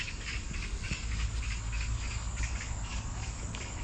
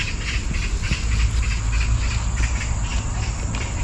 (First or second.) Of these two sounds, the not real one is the first